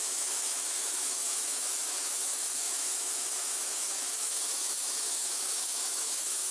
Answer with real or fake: fake